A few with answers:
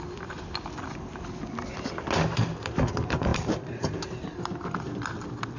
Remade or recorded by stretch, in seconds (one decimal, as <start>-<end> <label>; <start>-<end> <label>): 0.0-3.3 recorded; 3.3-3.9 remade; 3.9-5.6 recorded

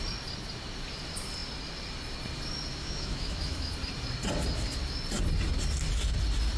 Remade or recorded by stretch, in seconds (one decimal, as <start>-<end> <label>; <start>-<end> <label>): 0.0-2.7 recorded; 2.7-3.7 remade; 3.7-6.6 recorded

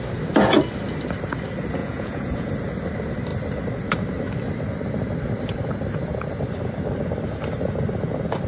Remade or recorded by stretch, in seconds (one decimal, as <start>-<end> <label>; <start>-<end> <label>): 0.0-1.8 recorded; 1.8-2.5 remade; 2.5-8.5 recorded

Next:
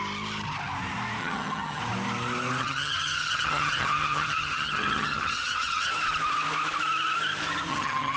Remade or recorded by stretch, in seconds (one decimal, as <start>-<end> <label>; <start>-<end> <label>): 0.0-1.2 recorded; 1.2-1.8 remade; 1.8-2.6 recorded; 2.6-5.9 remade; 5.9-7.7 recorded; 7.7-8.2 remade

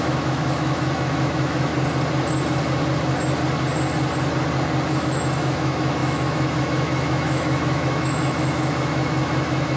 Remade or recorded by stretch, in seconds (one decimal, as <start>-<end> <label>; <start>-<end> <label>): 0.0-1.7 remade; 1.7-4.9 recorded; 4.9-9.8 remade

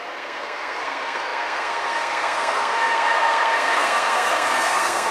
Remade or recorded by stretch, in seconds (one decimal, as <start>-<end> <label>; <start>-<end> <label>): 0.0-5.1 remade